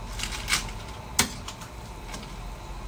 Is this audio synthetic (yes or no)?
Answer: no